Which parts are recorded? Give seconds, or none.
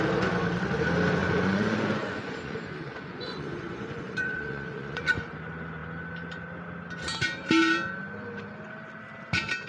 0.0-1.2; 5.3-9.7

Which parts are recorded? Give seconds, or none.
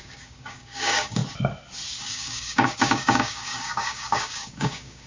1.2-2.0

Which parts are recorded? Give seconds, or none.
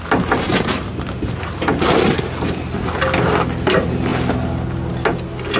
0.0-0.5; 2.1-5.6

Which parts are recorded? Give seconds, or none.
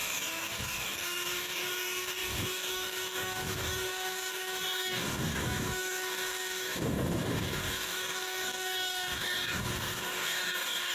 none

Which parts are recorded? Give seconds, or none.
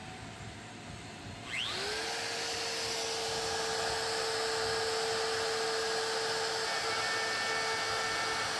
0.0-8.6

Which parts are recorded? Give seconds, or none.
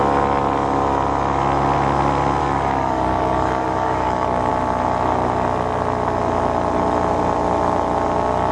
0.0-2.4; 4.5-8.5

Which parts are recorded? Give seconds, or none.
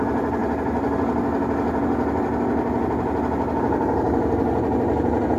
0.0-5.4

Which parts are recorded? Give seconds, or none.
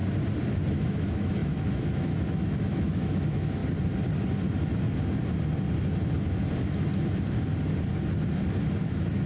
0.0-0.5; 3.6-8.7